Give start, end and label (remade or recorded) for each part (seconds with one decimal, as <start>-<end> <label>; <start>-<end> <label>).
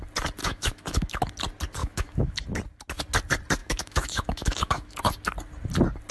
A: 0.0-0.4 recorded; 0.4-1.2 remade; 1.2-1.8 recorded; 1.8-2.4 remade; 2.4-3.6 recorded; 3.6-5.0 remade; 5.0-6.1 recorded